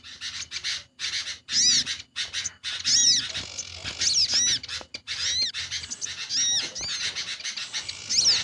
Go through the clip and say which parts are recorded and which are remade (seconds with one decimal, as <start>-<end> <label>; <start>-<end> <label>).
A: 0.0-8.4 recorded